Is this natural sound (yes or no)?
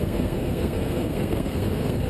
no